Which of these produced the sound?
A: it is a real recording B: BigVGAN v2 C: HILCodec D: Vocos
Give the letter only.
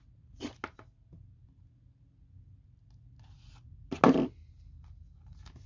A